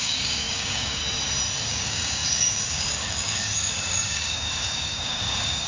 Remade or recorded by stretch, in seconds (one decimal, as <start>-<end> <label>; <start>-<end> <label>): 0.0-1.0 remade; 1.0-1.7 recorded; 1.7-5.7 remade